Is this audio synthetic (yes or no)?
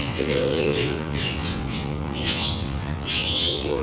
yes